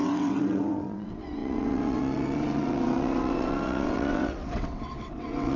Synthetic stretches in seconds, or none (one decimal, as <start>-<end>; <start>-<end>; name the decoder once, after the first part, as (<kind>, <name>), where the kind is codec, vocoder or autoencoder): 0.0-5.6 (vocoder, WaveNeXt)

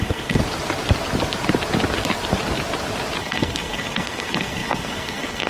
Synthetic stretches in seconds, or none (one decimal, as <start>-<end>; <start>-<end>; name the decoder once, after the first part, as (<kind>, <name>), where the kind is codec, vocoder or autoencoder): 0.0-0.4 (codec, SNAC); 3.2-5.5

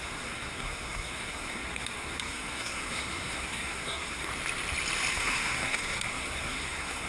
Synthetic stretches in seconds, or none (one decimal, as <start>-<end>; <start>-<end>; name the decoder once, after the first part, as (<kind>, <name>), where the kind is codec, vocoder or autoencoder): 0.0-4.3 (codec, SNAC); 5.1-7.1

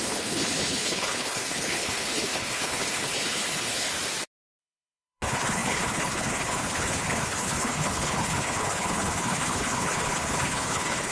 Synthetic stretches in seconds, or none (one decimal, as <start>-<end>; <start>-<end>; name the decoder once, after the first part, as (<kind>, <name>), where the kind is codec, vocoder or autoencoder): 0.0-3.9 (codec, HILCodec); 4.6-11.1

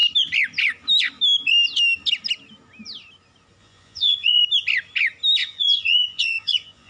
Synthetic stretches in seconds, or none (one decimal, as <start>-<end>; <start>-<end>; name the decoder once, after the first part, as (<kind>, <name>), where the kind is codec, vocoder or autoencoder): 3.6-4.4 (vocoder, Vocos); 5.4-6.9

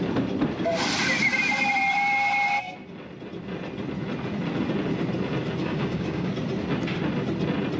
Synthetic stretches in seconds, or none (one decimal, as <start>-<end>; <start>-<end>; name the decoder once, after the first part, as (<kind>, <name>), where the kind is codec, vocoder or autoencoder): 5.6-6.3 (codec, DAC)

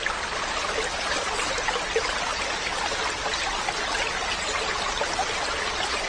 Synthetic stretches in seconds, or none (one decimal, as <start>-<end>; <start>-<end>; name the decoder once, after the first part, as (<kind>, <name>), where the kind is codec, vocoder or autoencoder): none